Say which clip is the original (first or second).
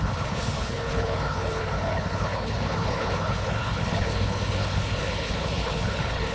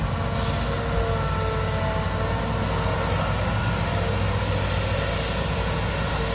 second